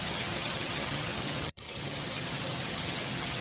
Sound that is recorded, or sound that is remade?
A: remade